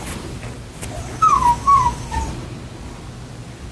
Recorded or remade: recorded